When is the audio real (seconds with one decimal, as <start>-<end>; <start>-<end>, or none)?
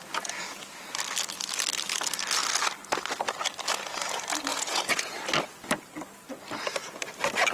0.0-4.5; 5.1-7.5